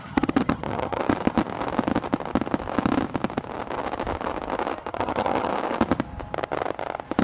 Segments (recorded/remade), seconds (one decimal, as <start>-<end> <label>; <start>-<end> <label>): 0.0-1.0 remade; 1.0-4.9 recorded; 4.9-5.5 remade; 5.5-7.2 recorded